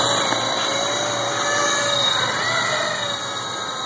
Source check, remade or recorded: recorded